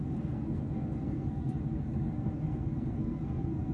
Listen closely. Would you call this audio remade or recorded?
remade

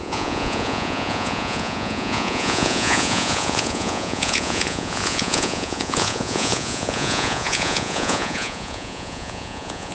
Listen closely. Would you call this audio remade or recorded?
remade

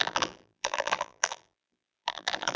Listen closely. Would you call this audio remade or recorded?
remade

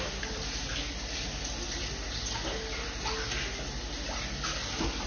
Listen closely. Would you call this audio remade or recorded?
recorded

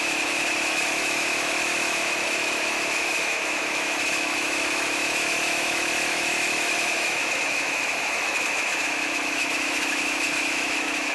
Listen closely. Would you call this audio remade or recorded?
remade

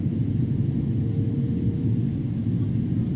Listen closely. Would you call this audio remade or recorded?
recorded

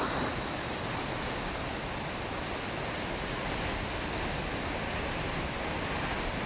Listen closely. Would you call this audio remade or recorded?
recorded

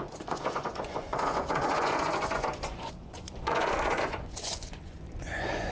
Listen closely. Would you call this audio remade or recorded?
remade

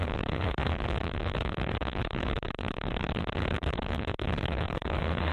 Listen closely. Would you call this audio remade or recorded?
remade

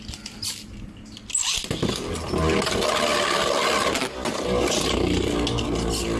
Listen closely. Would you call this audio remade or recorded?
recorded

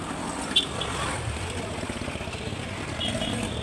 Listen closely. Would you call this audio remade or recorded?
recorded